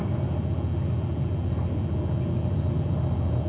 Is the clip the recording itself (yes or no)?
yes